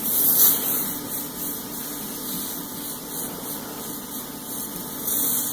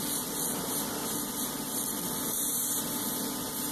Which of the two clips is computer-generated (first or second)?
second